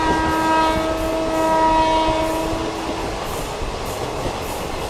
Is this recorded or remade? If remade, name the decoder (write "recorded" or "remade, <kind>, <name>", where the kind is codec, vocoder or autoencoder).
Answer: recorded